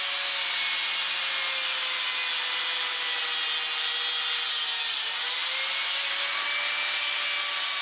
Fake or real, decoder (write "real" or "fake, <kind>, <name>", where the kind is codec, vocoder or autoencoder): real